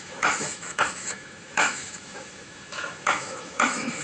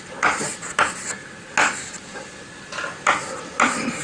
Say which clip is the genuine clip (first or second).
second